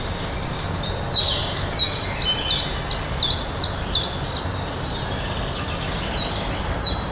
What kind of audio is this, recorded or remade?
recorded